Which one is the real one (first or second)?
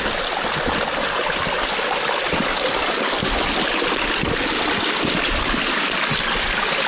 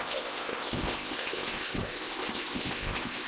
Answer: first